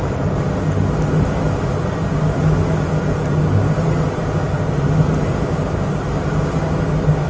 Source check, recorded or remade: recorded